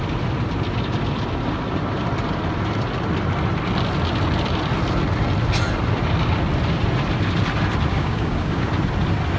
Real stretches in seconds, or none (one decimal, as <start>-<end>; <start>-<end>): 0.0-7.9; 8.7-9.4